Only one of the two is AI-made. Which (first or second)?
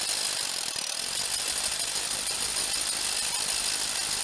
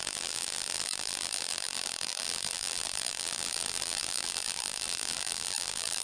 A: second